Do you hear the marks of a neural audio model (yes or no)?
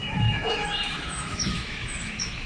yes